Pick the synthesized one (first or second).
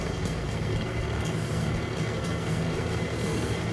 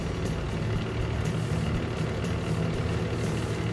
first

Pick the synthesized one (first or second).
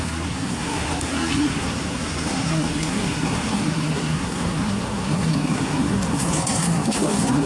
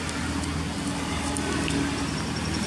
first